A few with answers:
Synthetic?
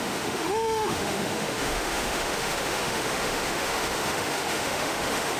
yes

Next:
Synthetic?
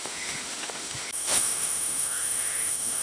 yes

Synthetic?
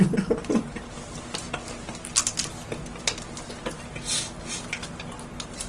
no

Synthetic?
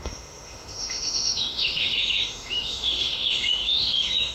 yes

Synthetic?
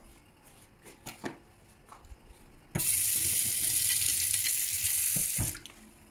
no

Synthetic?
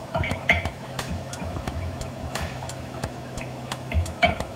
yes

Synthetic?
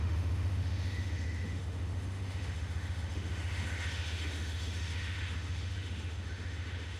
yes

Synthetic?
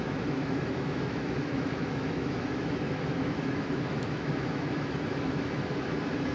yes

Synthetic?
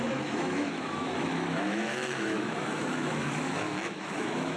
yes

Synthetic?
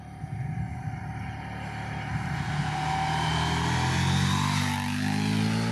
no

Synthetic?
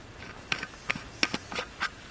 no